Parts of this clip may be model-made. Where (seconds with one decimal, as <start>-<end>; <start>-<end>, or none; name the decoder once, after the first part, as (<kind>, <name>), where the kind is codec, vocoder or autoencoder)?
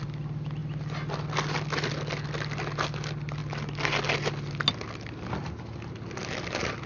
none